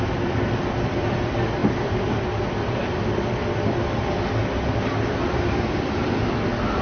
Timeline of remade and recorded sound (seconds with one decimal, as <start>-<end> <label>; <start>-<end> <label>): 0.0-6.8 recorded